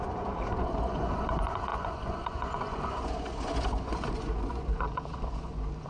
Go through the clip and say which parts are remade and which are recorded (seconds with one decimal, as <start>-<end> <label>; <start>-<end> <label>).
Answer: 0.0-5.9 remade